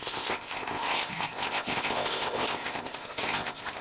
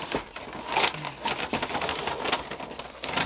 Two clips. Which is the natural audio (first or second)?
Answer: second